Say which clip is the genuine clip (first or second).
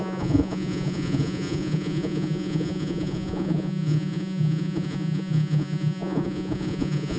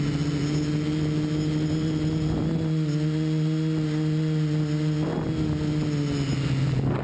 second